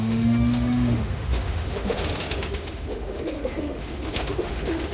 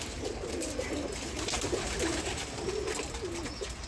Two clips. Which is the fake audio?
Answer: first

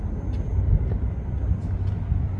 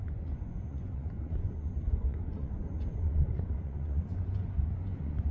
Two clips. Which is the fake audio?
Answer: second